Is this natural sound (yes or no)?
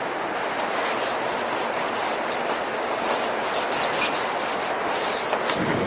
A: yes